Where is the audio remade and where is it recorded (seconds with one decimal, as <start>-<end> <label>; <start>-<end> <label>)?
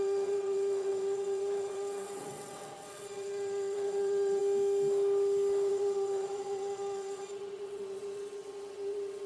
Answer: 0.0-4.4 remade; 4.4-5.7 recorded; 5.7-9.3 remade